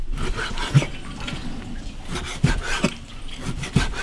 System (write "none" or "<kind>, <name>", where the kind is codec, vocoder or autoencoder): none